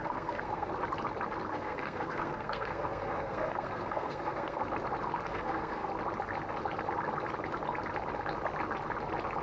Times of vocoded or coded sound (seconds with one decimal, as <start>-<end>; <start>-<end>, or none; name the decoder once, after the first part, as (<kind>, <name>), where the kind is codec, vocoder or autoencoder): 0.0-0.7 (codec, SNAC); 1.5-4.6; 5.3-5.9